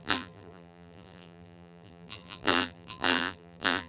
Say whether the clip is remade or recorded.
remade